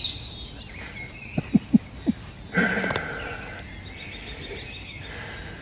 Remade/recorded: recorded